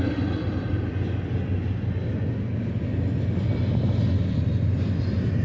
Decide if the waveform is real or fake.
real